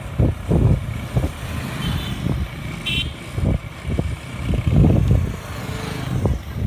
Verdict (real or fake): real